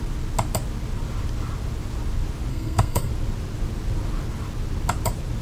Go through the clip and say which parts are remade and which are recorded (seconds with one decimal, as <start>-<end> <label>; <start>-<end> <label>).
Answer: 0.0-2.5 recorded; 2.5-3.1 remade; 3.1-5.4 recorded